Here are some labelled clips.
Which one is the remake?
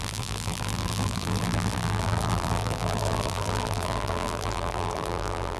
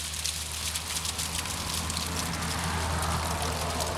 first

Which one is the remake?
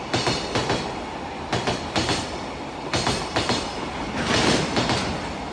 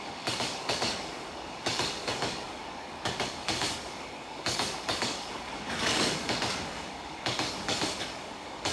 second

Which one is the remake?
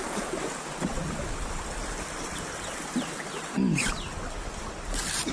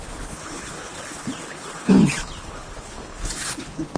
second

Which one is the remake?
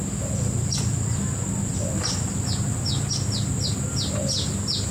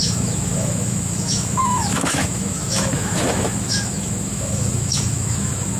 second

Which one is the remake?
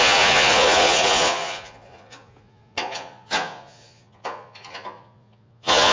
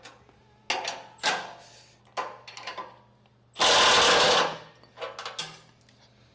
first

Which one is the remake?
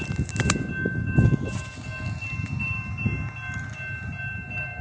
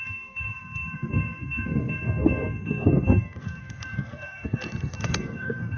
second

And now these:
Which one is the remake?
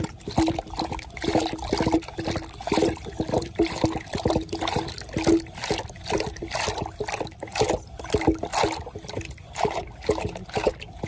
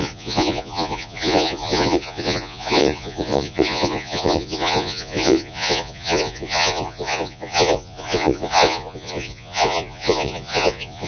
second